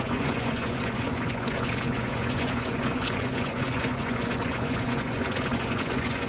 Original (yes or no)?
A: no